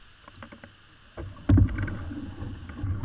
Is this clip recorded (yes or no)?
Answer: yes